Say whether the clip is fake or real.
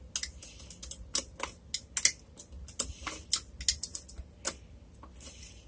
real